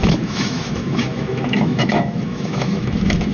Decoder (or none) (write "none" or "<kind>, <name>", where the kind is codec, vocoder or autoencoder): autoencoder, DAC-VAE